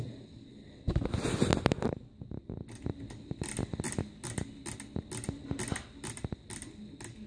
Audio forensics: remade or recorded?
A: recorded